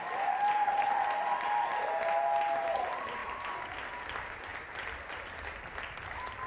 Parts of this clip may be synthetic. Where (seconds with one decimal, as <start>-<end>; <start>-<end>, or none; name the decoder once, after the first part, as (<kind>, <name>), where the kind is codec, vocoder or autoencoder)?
none